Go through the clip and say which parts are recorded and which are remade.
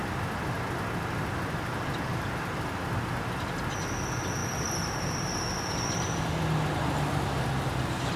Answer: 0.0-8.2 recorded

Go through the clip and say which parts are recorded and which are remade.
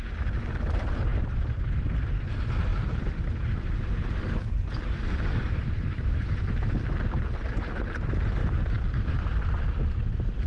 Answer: 0.0-2.7 recorded; 2.7-6.4 remade; 6.4-10.5 recorded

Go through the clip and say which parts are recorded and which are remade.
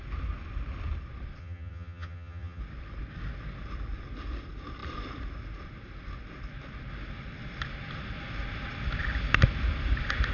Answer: 0.0-1.4 recorded; 1.4-2.6 remade; 2.6-10.3 recorded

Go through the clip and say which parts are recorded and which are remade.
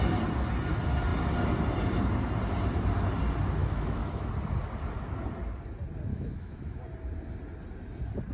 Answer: 0.0-3.6 recorded; 3.6-4.3 remade; 4.3-6.1 recorded; 6.1-6.8 remade; 6.8-8.3 recorded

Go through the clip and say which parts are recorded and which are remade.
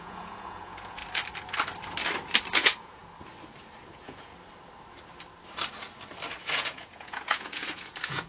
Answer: 0.0-1.0 remade; 1.0-2.5 recorded; 2.5-3.0 remade; 3.0-3.9 recorded; 3.9-4.3 remade; 4.3-6.5 recorded; 6.5-8.3 remade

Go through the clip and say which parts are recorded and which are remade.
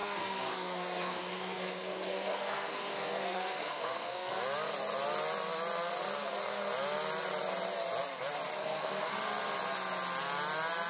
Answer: 0.0-4.3 remade; 4.3-8.6 recorded; 8.6-9.1 remade; 9.1-10.9 recorded